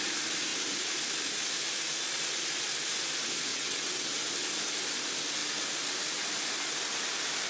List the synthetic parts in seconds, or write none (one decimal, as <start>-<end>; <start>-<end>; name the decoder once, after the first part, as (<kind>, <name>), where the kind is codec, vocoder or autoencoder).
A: 3.5-4.1 (vocoder, WaveNeXt)